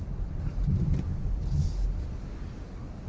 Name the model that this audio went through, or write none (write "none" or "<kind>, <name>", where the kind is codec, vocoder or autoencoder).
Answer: none